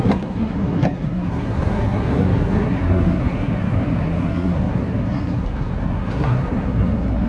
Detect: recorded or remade remade